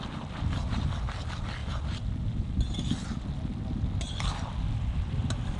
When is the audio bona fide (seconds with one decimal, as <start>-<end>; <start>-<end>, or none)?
0.0-5.6